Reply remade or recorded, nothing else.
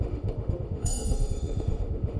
remade